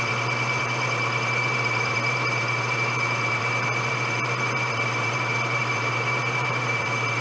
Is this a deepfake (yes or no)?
yes